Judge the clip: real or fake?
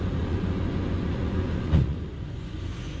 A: fake